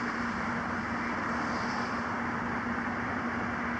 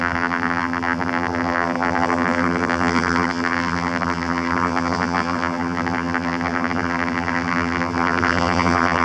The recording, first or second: first